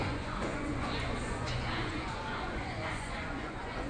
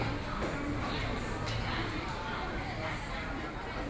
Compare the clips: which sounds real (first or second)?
second